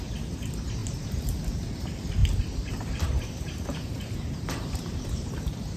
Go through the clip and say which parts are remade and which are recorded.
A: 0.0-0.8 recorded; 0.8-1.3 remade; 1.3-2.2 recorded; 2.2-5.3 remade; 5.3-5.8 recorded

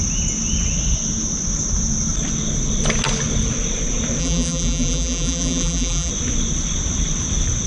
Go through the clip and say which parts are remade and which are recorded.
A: 0.0-4.2 recorded; 4.2-6.1 remade; 6.1-7.7 recorded